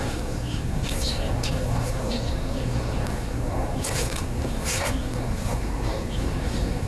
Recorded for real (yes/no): no